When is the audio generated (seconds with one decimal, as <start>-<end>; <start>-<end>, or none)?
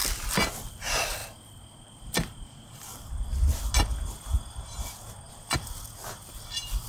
none